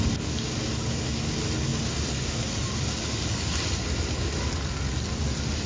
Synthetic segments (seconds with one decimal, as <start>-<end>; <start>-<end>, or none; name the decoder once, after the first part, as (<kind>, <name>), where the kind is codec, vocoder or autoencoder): none